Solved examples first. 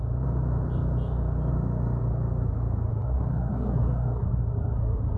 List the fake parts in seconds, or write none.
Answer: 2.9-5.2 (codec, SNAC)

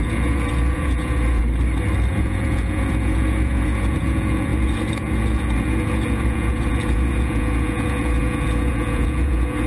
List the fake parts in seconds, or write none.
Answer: 0.0-1.4 (vocoder, Vocos); 2.1-9.7

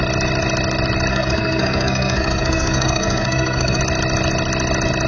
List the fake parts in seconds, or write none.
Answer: 1.1-3.8 (codec, SNAC)

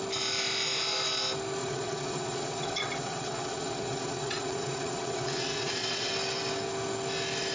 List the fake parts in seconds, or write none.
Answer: 1.6-6.1 (vocoder, WaveNeXt)

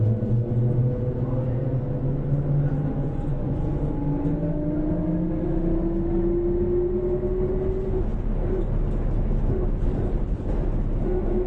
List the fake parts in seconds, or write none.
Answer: 3.0-3.7 (vocoder, Vocos)

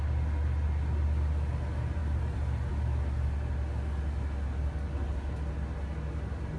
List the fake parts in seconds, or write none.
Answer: 2.0-2.8 (vocoder, BigVGAN v2)

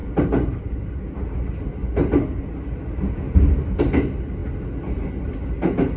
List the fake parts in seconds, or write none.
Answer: none

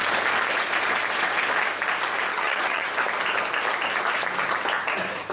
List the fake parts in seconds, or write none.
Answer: 2.3-2.9 (vocoder, HiFi-GAN)